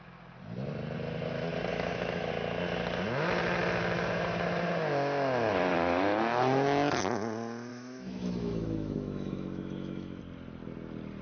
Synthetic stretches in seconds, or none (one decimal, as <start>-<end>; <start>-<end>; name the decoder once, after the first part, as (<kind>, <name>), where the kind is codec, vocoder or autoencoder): 1.7-2.3 (autoencoder, DAC-VAE); 7.7-10.2